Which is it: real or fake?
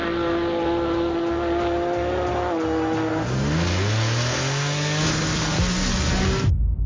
real